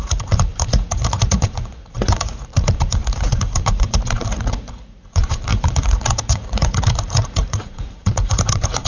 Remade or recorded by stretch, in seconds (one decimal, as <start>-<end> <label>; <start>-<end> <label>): 0.0-8.9 remade